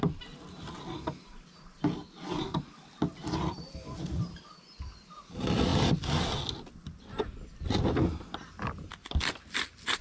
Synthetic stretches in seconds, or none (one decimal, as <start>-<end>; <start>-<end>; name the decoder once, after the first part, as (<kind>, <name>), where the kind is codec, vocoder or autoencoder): none

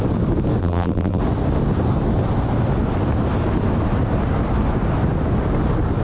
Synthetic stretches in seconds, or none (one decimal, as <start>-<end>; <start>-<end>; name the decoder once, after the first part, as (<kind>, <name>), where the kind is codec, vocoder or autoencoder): 0.6-1.2 (vocoder, BigVGAN v2)

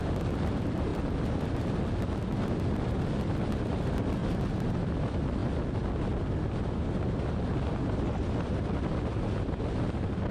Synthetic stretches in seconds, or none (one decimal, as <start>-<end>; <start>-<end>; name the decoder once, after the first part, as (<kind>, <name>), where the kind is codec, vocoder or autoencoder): 4.2-4.7 (vocoder, BigVGAN v2)

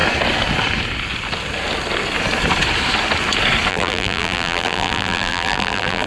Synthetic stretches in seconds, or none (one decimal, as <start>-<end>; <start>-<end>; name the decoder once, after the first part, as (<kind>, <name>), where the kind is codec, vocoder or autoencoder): 3.7-6.1 (vocoder, BigVGAN v2)